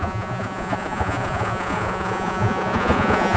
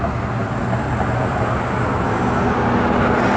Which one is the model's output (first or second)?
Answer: first